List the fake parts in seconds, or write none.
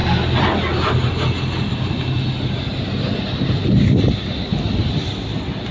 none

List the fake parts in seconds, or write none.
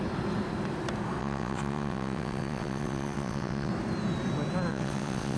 1.2-3.7 (vocoder, WaveNeXt); 4.7-5.4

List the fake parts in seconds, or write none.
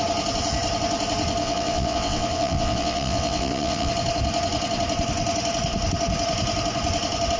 1.4-3.9 (vocoder, WaveNeXt)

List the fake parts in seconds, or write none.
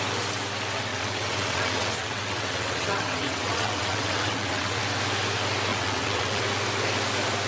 0.9-4.8 (vocoder, WaveNeXt); 5.7-6.4